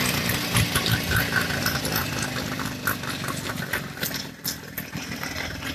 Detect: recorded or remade recorded